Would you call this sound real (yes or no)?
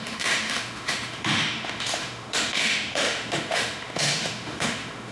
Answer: no